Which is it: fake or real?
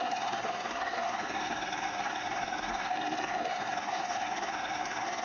fake